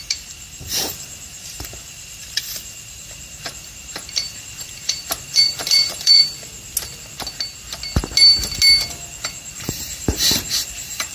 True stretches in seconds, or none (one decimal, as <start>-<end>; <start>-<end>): 6.2-9.7